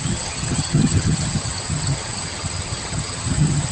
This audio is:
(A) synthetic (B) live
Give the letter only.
A